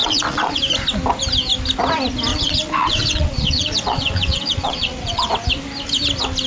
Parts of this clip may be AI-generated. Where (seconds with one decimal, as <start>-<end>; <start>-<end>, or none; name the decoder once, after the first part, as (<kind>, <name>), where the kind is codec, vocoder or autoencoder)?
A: 0.0-0.6 (vocoder, WaveNeXt); 2.3-5.3